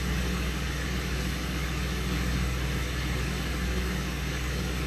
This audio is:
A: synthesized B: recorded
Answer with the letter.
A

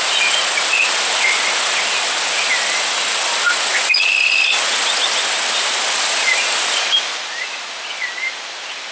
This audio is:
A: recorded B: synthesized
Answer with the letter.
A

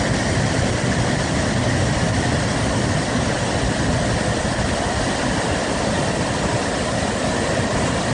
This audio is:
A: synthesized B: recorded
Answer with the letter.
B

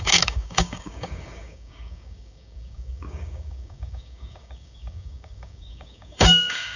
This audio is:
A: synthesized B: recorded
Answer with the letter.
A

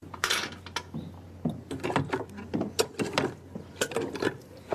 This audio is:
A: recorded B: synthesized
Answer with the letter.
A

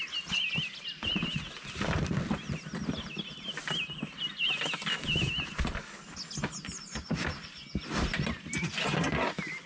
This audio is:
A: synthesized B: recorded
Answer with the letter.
B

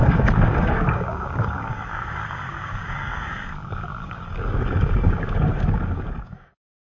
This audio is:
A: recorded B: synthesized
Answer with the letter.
B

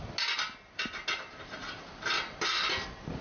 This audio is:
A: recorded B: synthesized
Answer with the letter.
A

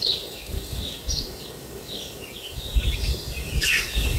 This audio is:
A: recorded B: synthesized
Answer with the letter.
B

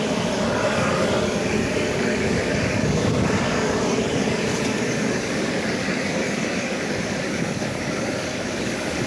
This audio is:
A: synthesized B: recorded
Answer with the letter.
A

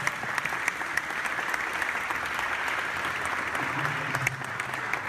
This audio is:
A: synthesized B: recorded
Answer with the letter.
B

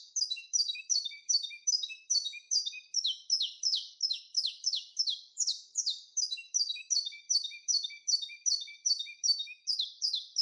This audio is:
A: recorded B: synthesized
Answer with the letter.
B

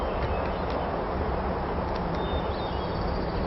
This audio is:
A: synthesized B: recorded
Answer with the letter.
B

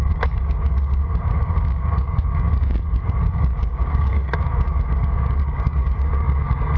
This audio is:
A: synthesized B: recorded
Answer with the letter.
A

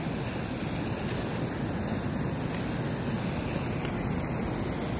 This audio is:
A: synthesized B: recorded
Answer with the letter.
B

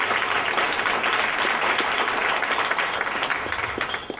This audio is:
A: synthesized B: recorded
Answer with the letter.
B